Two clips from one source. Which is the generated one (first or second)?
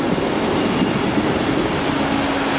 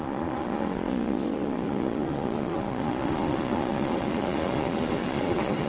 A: second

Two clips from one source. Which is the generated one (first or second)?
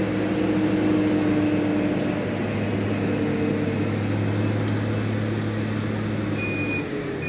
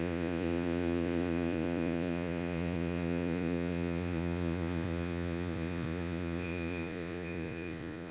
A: second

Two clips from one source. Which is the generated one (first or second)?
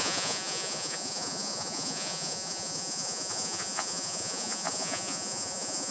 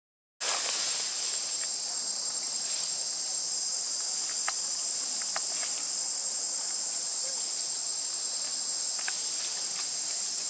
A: first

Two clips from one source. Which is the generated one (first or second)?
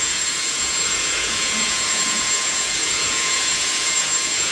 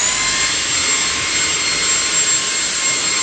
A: first